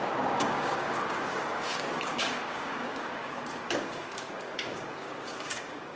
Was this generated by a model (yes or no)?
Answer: yes